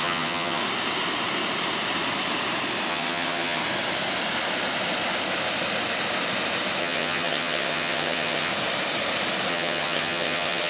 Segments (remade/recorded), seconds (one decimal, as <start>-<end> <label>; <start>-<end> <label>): 0.0-0.6 remade; 0.6-2.9 recorded; 2.9-3.6 remade; 3.6-6.8 recorded; 6.8-8.5 remade; 8.5-9.5 recorded; 9.5-10.7 remade

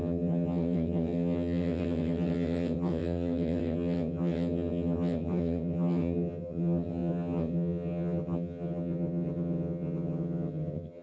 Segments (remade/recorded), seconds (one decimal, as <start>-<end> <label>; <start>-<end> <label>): 0.0-11.0 remade